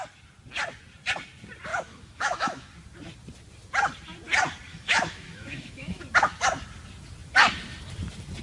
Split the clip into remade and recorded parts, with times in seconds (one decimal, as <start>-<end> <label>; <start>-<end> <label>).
0.0-1.7 recorded; 1.7-2.7 remade; 2.7-4.7 recorded; 4.7-6.0 remade; 6.0-8.4 recorded